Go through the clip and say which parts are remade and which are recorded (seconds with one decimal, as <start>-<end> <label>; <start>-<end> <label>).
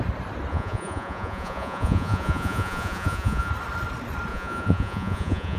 0.0-0.5 recorded; 0.5-3.5 remade; 3.5-4.3 recorded; 4.3-5.6 remade